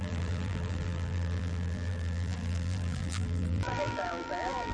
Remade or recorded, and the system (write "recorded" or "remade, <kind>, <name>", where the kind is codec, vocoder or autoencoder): remade, vocoder, BigVGAN v2